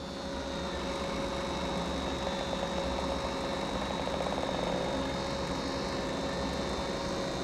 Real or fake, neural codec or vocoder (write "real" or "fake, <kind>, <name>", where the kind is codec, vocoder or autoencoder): real